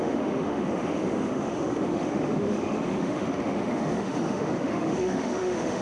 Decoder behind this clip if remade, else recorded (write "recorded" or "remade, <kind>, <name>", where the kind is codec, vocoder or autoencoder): remade, autoencoder, DAC-VAE